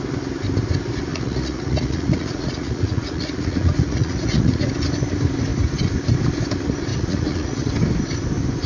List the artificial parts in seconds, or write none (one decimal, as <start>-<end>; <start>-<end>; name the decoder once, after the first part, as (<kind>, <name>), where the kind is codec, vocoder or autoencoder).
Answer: 1.1-4.6 (vocoder, Vocos); 6.9-7.7